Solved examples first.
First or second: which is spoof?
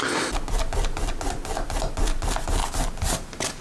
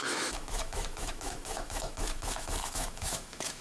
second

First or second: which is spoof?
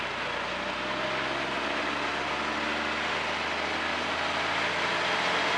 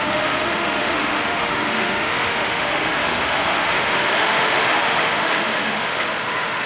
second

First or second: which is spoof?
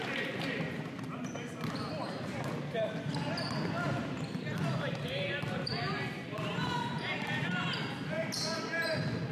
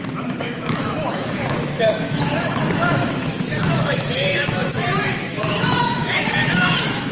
second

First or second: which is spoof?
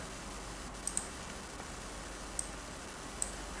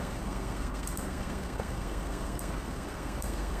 second